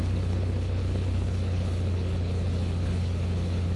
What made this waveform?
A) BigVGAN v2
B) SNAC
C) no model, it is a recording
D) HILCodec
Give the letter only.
D